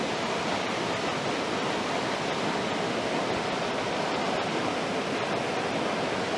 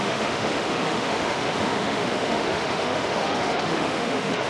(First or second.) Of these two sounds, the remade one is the second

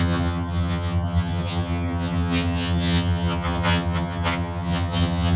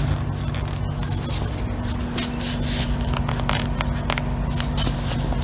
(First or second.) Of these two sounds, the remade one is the first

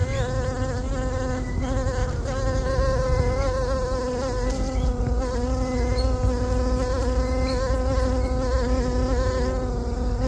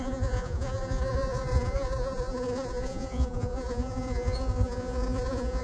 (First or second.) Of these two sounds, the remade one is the second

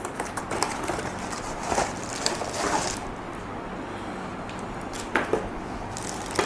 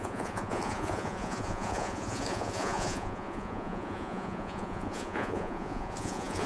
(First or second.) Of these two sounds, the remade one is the second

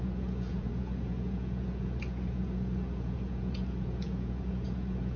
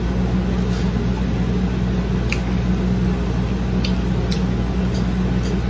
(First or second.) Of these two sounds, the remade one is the first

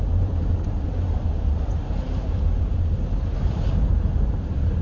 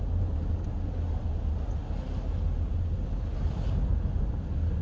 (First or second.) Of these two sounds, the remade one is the first